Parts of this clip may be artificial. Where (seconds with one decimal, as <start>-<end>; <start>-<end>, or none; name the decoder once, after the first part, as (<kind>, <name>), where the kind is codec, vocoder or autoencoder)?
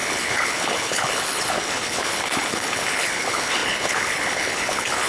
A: 0.0-5.1 (codec, HILCodec)